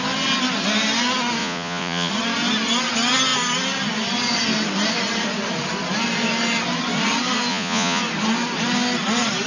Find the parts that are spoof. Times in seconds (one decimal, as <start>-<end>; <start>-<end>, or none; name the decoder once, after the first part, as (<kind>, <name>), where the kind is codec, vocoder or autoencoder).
1.4-2.1 (vocoder, Vocos); 7.5-8.0